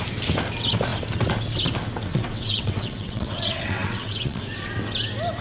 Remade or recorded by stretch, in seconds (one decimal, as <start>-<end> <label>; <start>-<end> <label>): 0.0-2.1 recorded; 2.1-4.4 remade; 4.4-5.4 recorded